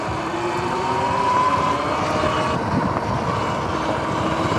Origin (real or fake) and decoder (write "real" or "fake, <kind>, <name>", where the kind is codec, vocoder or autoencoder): real